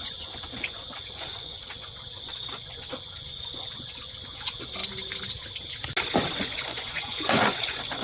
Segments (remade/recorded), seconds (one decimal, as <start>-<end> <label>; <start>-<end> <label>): 0.0-4.8 remade; 4.8-6.4 recorded; 6.4-8.0 remade